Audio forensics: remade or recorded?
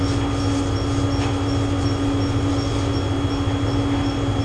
recorded